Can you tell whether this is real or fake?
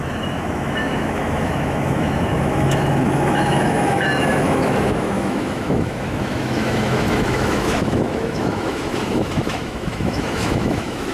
fake